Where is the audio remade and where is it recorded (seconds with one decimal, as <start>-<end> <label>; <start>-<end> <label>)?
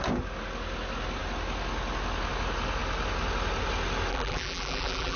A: 0.0-4.1 recorded; 4.1-5.2 remade